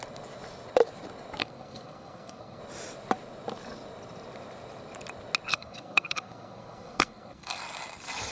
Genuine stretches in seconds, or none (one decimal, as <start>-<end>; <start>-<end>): 0.0-1.4; 2.6-5.5; 7.6-8.3